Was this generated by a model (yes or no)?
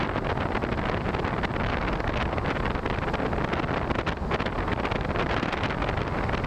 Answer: no